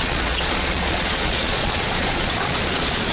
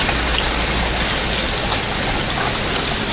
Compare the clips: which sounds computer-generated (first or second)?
first